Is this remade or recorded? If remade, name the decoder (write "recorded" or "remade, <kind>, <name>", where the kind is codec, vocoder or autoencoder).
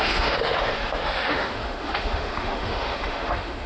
remade, autoencoder, DAC-VAE